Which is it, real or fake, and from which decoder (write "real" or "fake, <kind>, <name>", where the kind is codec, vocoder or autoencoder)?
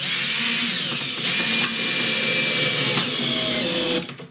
real